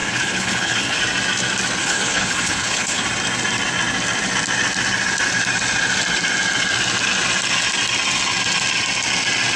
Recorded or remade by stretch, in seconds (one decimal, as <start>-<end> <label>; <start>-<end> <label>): 0.0-1.0 remade; 1.0-1.8 recorded; 1.8-3.0 remade; 3.0-9.6 recorded